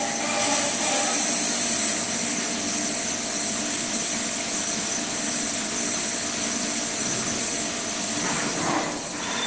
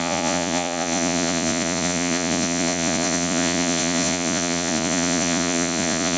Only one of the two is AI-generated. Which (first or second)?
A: second